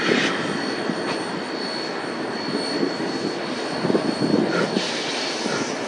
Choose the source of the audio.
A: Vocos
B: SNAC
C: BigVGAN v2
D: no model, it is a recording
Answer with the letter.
D